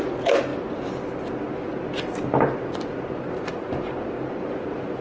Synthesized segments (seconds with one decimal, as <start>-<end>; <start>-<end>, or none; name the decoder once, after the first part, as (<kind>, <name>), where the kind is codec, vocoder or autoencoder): none